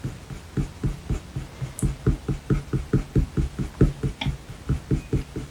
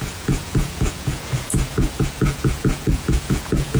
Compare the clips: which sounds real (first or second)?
first